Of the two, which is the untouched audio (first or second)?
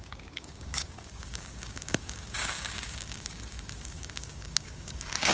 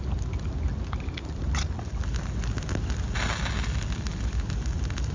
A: second